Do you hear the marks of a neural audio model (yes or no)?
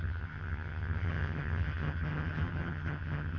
yes